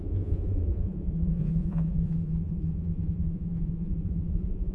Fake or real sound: fake